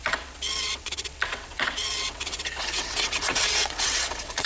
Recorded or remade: remade